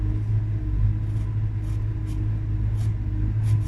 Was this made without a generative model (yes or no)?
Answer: yes